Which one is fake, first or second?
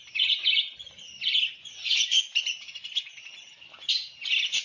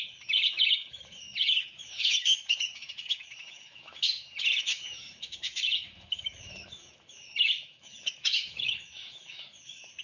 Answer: second